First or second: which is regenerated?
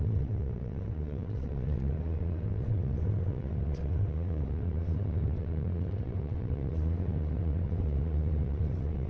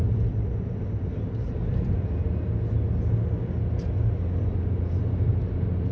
first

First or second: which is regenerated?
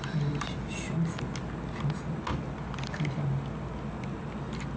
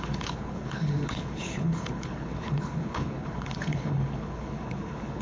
second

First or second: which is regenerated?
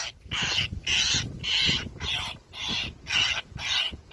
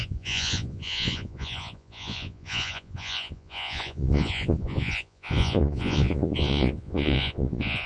second